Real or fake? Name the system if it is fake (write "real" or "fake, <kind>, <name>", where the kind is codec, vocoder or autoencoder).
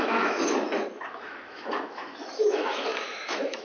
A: fake, autoencoder, DAC-VAE